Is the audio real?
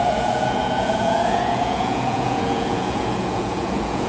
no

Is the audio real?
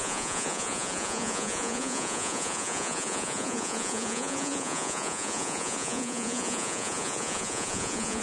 no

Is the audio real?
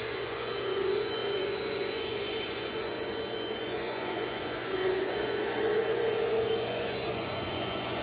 no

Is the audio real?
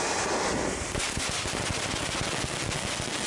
yes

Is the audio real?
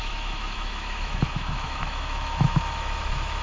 no